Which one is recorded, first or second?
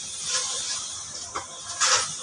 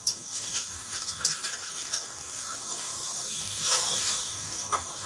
first